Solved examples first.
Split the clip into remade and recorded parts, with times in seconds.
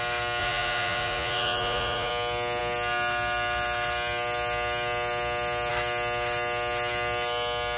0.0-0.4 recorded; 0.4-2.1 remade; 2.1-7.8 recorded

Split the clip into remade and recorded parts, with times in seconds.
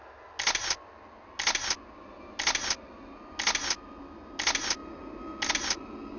0.0-6.2 recorded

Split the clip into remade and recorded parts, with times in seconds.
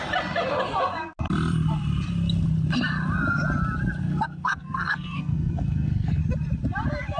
0.0-4.0 recorded; 4.0-6.2 remade; 6.2-7.2 recorded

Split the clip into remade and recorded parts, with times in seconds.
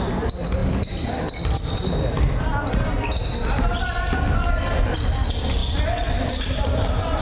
0.0-7.2 recorded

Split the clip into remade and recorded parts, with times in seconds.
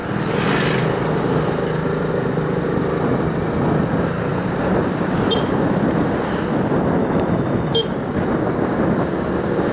0.0-7.0 recorded; 7.0-7.9 remade; 7.9-9.7 recorded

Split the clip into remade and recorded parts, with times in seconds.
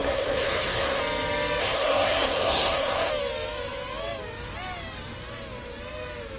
0.0-1.0 remade; 1.0-1.6 recorded; 1.6-3.1 remade; 3.1-6.4 recorded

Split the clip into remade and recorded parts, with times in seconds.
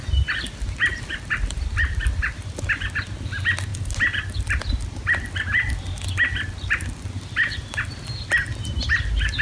0.0-9.4 recorded